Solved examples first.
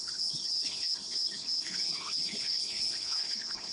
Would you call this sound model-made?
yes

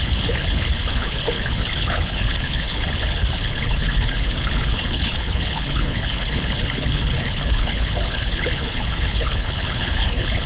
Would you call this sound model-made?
yes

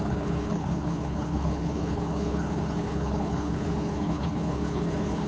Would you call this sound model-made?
yes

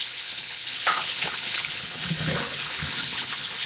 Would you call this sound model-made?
yes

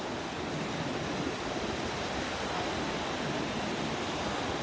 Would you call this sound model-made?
no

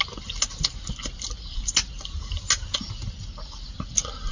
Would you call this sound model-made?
no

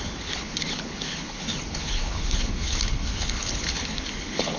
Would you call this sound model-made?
yes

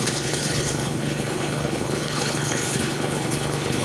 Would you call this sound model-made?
yes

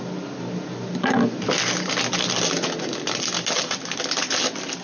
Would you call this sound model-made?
no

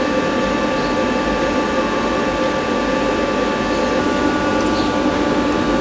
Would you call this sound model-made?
no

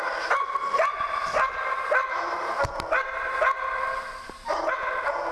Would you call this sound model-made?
no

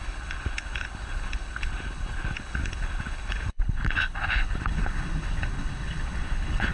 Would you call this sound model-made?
yes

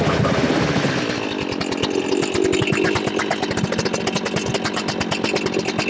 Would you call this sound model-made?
no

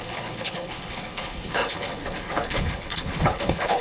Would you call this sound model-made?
yes